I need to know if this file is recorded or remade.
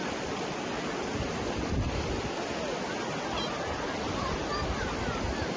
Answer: recorded